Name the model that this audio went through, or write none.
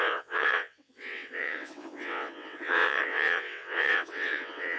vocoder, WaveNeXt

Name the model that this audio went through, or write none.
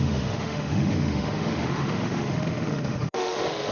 autoencoder, DAC-VAE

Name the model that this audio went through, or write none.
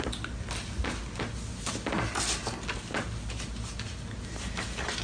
none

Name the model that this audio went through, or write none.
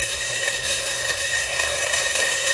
codec, SNAC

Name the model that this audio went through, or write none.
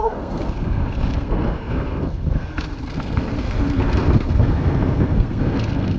codec, SNAC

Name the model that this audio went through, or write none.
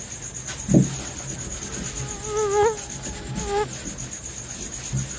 none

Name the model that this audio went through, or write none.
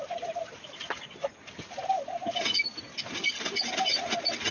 none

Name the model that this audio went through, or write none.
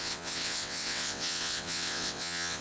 vocoder, WaveNeXt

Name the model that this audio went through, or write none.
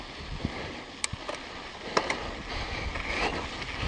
none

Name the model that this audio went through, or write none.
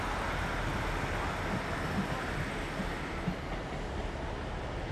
none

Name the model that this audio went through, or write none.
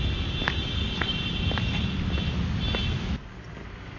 none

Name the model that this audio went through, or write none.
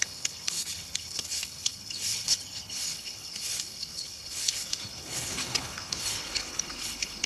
codec, HILCodec